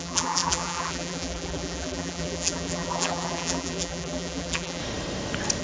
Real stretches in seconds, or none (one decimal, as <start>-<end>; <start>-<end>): 4.8-5.6